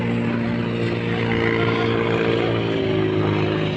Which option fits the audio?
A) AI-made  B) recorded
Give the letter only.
B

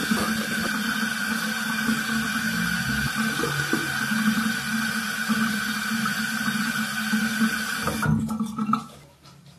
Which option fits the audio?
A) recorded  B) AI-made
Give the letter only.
A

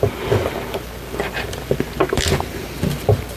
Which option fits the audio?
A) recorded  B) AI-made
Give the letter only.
B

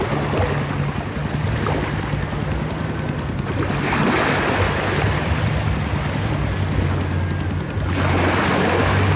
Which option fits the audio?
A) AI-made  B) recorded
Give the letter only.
B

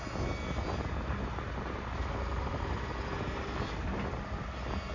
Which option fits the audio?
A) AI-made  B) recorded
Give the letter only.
B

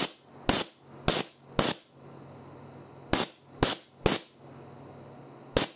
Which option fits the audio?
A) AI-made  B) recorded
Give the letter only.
B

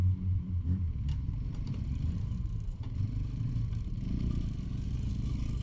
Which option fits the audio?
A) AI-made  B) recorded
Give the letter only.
A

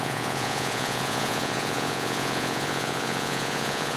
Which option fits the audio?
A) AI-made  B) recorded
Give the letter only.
A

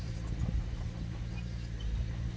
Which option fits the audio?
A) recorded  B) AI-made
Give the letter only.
A